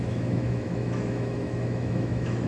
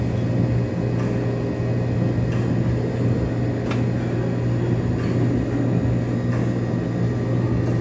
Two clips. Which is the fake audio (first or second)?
first